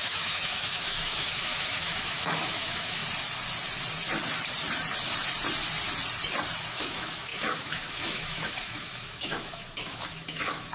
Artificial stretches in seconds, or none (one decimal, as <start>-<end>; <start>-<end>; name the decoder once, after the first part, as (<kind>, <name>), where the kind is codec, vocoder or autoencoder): 0.0-3.0 (autoencoder, DAC-VAE); 6.7-10.7